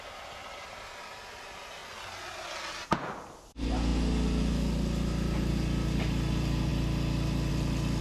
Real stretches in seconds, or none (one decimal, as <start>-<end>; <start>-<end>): 0.0-8.0

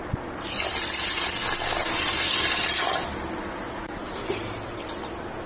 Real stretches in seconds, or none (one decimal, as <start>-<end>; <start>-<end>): 0.0-5.5

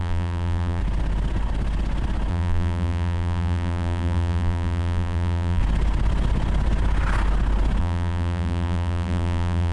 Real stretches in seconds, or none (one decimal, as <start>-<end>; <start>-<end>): 0.8-2.3; 5.6-7.8

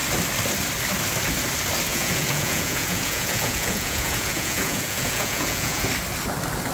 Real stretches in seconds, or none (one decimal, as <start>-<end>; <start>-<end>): 0.0-1.9; 5.9-6.7

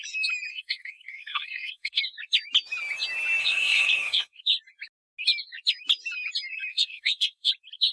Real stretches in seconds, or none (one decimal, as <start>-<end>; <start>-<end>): 0.0-0.5; 2.0-3.4; 4.4-6.7; 7.5-7.9